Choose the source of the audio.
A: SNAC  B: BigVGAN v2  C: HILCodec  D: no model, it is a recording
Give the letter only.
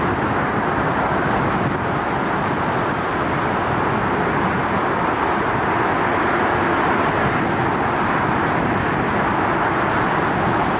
D